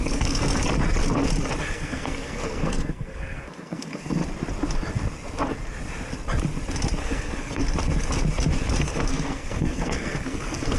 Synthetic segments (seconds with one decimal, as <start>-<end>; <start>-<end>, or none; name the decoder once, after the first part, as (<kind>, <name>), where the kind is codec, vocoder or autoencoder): 0.0-0.5 (codec, SNAC); 1.6-4.2; 7.0-7.6; 8.8-10.8